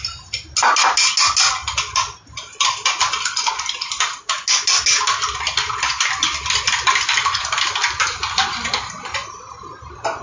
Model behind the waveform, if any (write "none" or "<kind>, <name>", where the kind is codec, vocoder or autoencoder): none